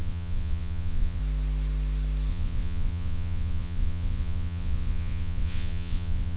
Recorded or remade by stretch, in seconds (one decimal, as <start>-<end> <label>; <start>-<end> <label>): 0.0-1.2 remade; 1.2-2.3 recorded; 2.3-6.4 remade